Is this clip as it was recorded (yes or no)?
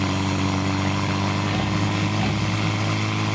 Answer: yes